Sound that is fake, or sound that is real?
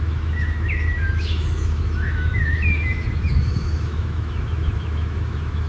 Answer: fake